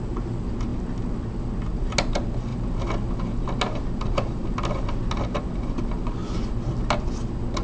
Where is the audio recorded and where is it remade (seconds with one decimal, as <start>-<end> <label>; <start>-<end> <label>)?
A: 0.0-7.6 recorded